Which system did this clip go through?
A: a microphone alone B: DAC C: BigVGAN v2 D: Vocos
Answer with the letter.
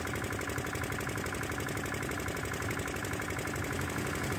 A